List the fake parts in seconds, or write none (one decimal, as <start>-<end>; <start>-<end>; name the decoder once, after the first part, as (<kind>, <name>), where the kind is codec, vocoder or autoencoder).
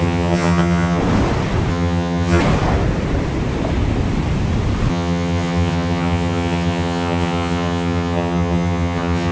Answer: 0.0-1.0 (vocoder, HiFi-GAN); 1.7-2.4; 4.9-9.3